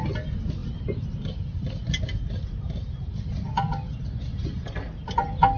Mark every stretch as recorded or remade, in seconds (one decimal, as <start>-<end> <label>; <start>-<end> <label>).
0.0-5.6 recorded